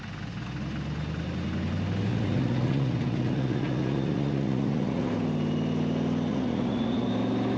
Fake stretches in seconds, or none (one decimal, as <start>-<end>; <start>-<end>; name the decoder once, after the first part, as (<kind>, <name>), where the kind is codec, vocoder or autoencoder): 2.1-5.1 (vocoder, Vocos); 6.3-7.1